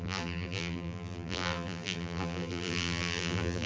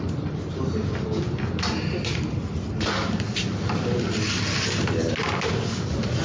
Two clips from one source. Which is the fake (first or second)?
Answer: first